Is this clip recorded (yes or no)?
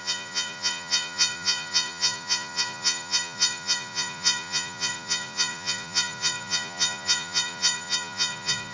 no